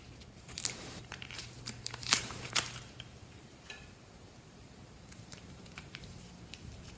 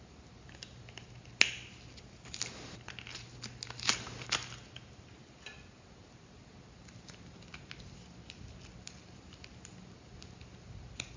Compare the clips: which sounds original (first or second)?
second